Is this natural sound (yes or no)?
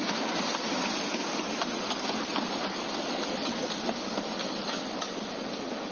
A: yes